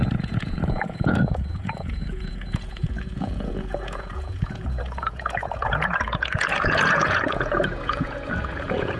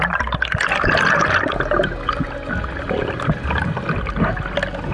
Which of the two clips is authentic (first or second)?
second